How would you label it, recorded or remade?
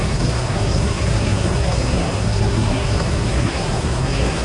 remade